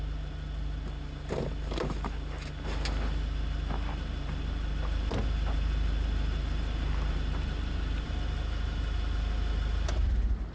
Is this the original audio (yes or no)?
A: yes